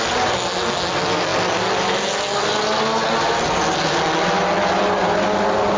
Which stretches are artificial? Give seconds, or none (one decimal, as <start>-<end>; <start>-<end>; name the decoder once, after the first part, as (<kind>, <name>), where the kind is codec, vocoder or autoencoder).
none